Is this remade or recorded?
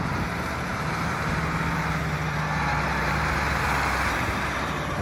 remade